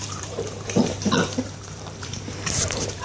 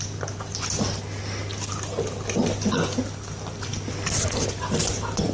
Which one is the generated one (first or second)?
first